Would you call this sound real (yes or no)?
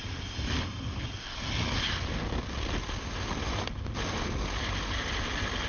yes